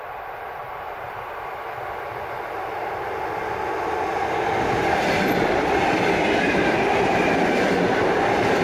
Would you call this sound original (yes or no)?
yes